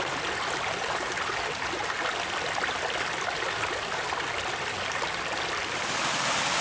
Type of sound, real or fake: real